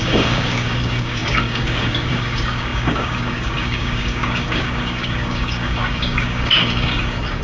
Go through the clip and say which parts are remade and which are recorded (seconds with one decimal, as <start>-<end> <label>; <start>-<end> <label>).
0.0-7.4 remade